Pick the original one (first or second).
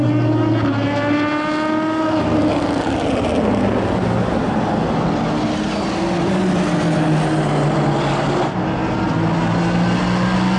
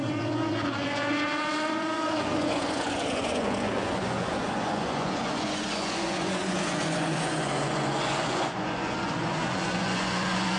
first